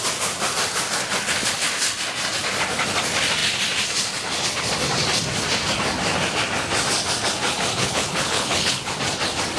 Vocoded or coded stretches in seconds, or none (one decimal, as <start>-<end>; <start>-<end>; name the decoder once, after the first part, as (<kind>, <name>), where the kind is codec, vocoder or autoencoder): 7.8-8.9 (codec, HILCodec)